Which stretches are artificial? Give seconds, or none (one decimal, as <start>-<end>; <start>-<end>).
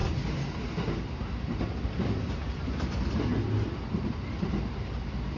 none